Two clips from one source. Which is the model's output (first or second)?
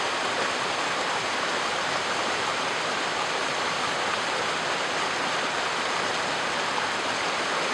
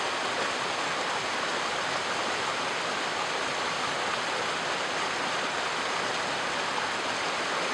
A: first